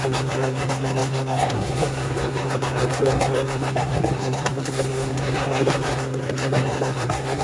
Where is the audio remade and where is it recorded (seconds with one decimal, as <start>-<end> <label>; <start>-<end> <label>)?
0.0-7.4 remade